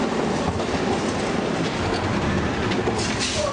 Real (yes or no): yes